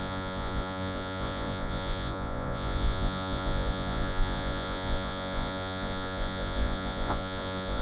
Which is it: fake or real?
fake